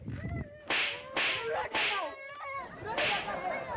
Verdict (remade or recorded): recorded